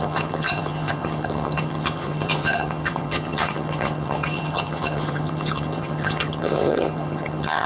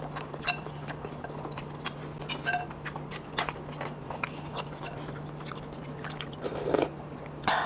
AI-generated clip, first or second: first